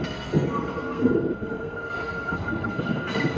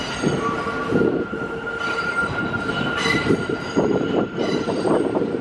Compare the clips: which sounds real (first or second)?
second